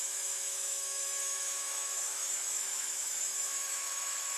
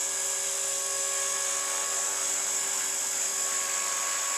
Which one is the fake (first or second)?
first